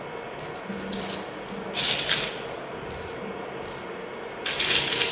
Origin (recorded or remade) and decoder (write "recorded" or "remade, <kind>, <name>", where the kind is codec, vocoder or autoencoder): recorded